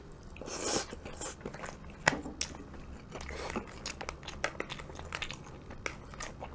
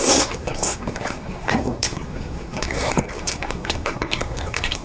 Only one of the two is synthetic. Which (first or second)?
second